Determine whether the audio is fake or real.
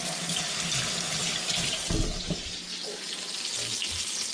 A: real